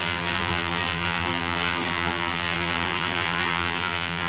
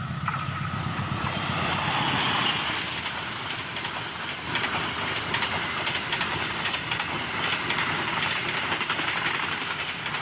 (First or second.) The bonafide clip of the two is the second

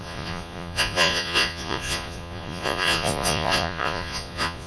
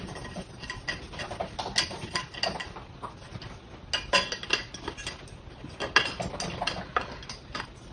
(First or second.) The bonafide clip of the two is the second